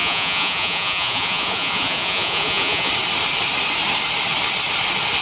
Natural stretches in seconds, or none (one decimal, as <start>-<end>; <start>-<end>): 2.9-5.2